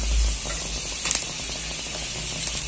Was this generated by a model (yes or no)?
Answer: no